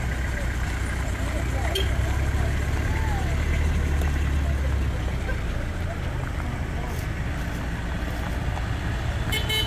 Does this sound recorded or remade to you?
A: recorded